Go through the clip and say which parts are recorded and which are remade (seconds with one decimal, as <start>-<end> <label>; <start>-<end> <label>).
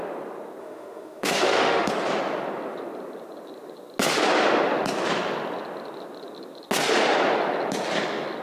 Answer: 0.0-0.6 recorded; 0.6-1.9 remade; 1.9-8.4 recorded